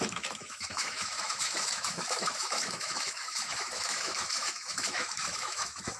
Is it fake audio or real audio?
fake